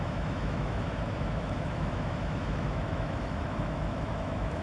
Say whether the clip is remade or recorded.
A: remade